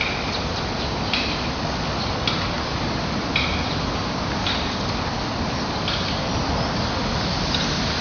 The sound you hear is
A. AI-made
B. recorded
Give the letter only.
B